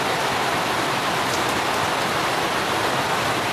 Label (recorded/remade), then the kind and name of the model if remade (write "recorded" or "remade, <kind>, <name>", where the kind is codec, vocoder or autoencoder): recorded